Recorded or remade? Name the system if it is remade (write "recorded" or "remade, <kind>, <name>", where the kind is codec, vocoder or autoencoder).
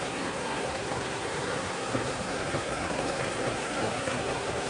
remade, codec, SNAC